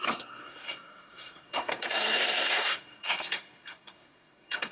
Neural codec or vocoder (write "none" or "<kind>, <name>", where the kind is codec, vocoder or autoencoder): codec, SNAC